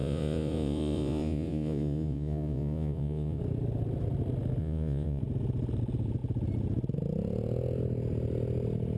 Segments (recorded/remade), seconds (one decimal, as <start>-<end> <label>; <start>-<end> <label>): 0.0-3.4 remade; 3.4-4.6 recorded; 4.6-5.2 remade; 5.2-9.0 recorded